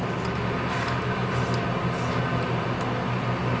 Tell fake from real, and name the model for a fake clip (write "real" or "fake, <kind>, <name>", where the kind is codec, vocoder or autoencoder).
real